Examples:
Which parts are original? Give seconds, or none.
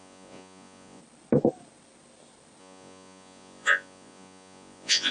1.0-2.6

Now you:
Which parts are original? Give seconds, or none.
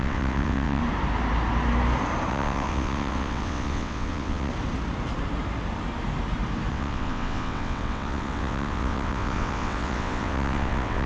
0.8-2.3; 4.5-6.7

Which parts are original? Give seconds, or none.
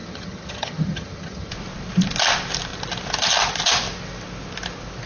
1.5-5.1